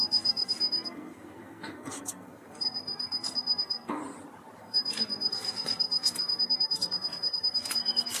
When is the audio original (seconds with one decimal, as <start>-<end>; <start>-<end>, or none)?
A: 4.0-4.6